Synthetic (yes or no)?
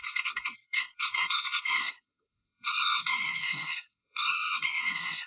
yes